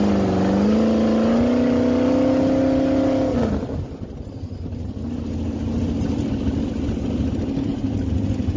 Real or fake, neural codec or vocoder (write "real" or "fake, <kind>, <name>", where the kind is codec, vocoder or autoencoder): real